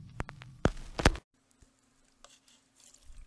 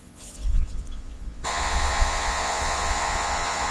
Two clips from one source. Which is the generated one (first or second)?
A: second